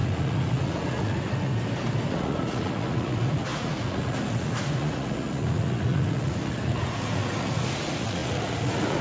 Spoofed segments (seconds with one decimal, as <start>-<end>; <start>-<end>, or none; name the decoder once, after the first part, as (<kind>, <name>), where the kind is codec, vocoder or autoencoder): 0.0-1.5 (vocoder, Vocos); 2.1-9.0